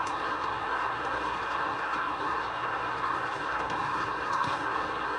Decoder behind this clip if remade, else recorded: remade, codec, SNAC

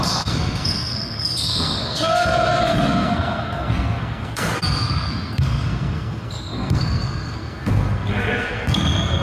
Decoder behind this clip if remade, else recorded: remade, codec, SNAC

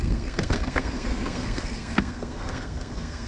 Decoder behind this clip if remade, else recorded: remade, codec, SNAC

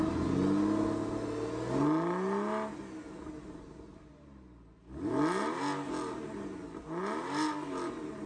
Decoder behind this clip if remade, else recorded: recorded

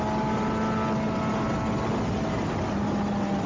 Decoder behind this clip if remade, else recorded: recorded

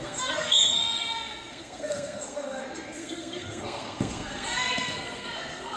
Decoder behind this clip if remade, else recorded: remade, codec, SNAC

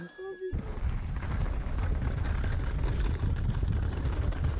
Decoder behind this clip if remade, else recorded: recorded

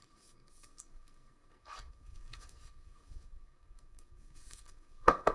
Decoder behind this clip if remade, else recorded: remade, codec, SNAC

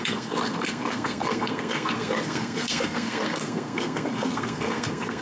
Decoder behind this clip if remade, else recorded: remade, codec, SNAC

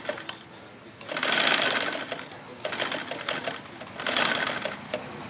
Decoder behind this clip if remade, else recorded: recorded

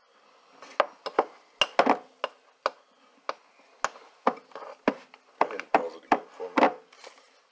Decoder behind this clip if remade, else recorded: recorded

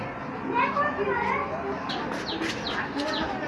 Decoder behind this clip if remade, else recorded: recorded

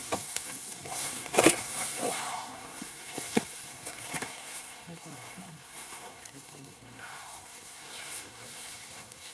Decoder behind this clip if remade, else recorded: remade, codec, SNAC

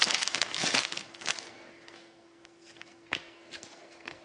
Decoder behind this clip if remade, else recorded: remade, codec, SNAC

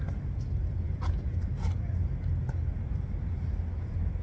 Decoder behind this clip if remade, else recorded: recorded